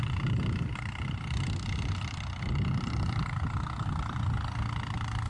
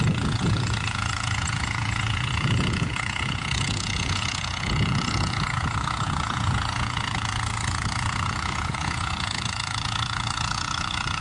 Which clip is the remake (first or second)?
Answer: second